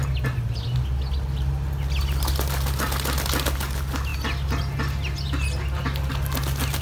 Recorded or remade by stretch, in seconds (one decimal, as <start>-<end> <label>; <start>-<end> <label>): 0.0-6.8 recorded